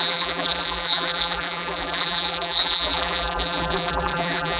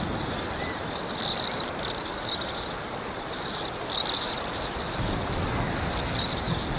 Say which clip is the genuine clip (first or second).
second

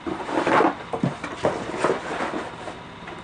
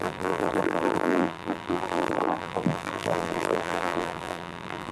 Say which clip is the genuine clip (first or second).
first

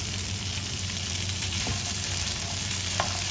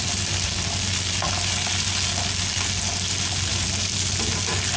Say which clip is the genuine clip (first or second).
second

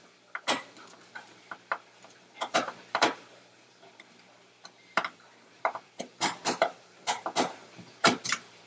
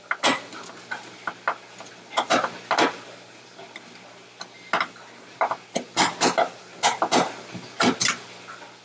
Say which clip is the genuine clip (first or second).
second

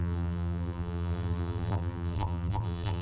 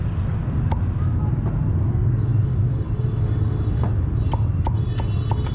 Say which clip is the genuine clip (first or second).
second